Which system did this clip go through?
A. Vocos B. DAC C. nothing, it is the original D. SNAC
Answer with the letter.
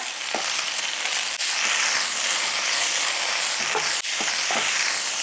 C